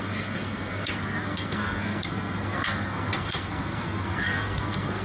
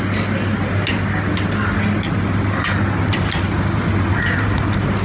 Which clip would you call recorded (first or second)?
second